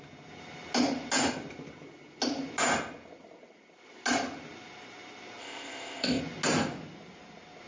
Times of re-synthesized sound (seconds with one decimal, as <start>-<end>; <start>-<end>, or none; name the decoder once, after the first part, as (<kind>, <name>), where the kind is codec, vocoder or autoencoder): 5.4-6.2 (codec, ZipCodec)